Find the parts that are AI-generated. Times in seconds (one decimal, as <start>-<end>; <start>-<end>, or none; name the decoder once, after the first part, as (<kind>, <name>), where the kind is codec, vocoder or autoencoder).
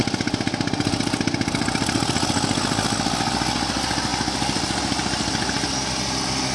none